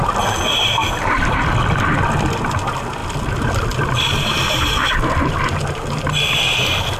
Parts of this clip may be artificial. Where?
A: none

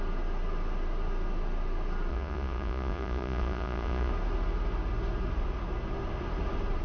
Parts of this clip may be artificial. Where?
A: 2.1-4.1 (vocoder, Vocos)

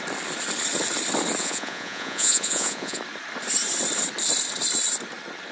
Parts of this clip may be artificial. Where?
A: 1.4-3.0 (vocoder, Vocos)